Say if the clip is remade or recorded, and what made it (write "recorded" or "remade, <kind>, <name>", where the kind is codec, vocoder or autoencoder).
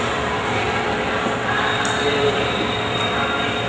recorded